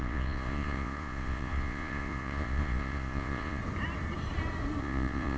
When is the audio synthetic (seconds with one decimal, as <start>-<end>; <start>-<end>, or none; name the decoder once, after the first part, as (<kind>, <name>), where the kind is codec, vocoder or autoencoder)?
0.0-3.6 (vocoder, Vocos); 4.8-5.4